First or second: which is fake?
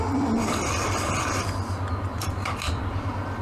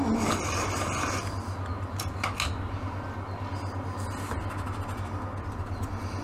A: first